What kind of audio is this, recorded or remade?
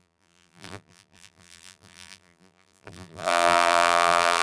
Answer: remade